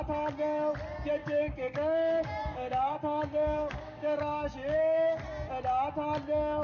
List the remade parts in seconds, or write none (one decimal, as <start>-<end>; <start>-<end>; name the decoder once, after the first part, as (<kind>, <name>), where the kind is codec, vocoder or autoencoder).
1.2-5.2 (codec, DAC)